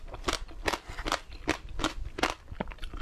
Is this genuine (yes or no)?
no